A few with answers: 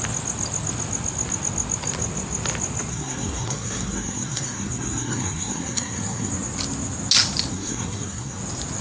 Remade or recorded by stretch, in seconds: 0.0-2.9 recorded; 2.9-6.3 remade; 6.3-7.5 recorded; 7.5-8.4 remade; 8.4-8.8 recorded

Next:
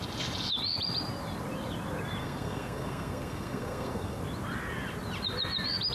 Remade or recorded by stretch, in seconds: 0.0-2.2 recorded; 2.2-4.2 remade; 4.2-5.9 recorded